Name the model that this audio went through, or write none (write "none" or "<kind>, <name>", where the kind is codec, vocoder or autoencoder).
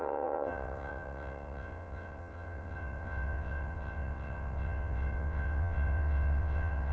vocoder, WaveNeXt